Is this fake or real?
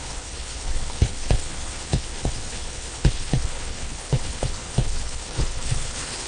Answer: fake